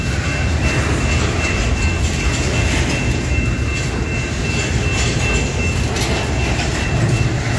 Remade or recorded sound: recorded